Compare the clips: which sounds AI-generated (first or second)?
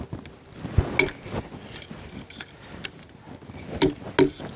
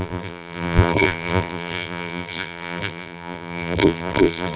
second